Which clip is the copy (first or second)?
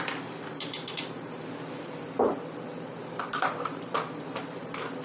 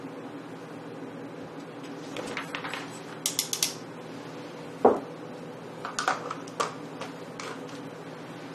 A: first